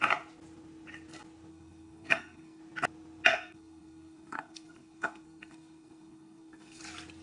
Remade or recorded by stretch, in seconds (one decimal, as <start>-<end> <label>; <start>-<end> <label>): 0.0-1.5 recorded; 1.5-2.6 remade; 2.6-3.3 recorded; 3.3-6.8 remade; 6.8-7.2 recorded